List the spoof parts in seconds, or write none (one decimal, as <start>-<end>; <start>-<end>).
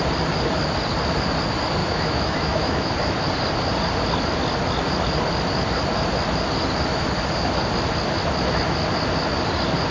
1.8-2.9